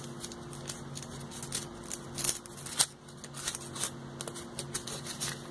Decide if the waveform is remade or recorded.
recorded